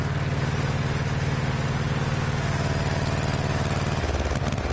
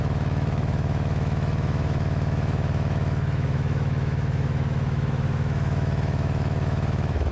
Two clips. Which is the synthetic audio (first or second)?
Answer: second